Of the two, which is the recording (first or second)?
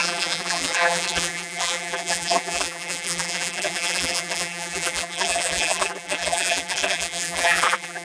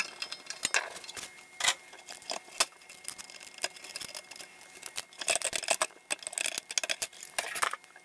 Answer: second